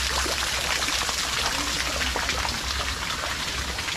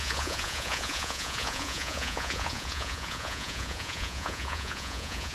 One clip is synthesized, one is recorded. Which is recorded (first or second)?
first